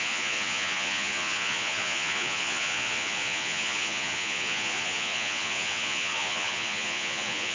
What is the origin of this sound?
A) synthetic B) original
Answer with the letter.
A